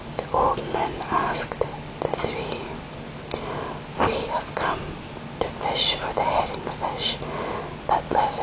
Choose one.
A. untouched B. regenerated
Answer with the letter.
A